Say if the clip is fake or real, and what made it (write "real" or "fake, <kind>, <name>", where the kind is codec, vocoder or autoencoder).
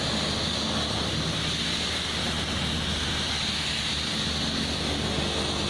real